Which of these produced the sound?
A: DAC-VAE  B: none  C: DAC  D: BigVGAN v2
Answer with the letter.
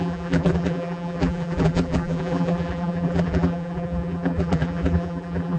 D